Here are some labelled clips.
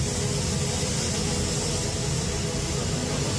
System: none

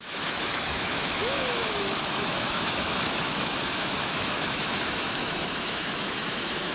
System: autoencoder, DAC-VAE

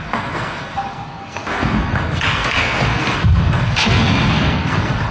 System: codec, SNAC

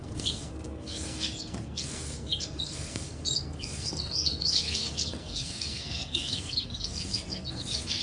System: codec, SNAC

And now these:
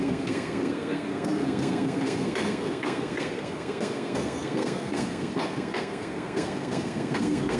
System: codec, SNAC